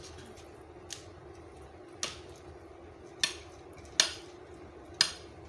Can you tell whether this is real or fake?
real